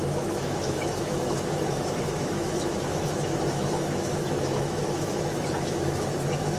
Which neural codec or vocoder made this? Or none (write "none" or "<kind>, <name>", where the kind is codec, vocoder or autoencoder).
autoencoder, DAC-VAE